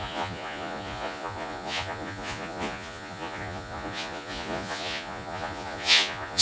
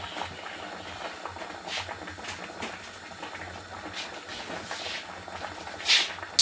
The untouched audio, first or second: second